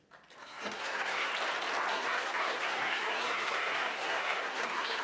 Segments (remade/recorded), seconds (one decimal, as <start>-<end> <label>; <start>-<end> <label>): 0.0-0.4 recorded; 0.4-1.3 remade; 1.3-1.9 recorded; 1.9-5.0 remade